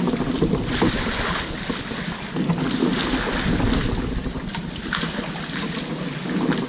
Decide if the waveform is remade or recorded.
recorded